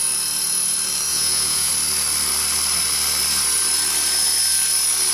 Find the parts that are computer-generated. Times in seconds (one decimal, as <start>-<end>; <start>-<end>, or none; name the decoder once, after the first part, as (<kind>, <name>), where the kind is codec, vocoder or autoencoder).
1.1-1.7 (vocoder, Vocos)